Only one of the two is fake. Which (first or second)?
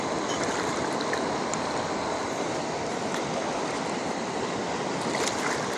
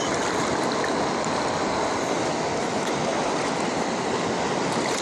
first